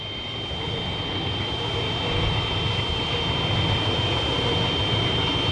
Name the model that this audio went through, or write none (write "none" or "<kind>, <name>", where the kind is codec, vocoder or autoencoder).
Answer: none